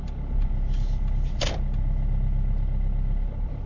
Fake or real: fake